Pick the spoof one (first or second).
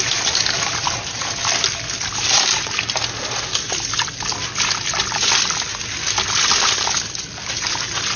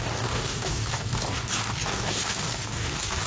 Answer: second